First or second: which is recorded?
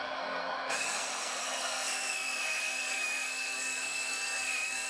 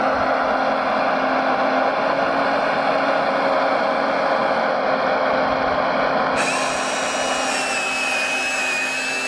second